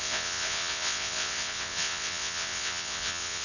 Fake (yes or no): yes